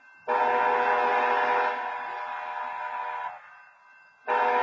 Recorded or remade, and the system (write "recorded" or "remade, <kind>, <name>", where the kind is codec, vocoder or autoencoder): recorded